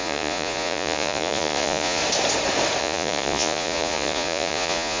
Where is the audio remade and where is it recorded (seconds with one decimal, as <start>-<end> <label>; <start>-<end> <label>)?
0.0-2.0 remade; 2.0-2.8 recorded; 2.8-5.0 remade